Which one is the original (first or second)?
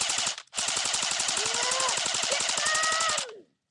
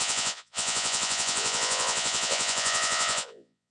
first